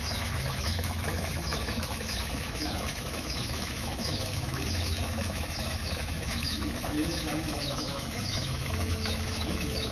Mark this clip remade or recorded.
remade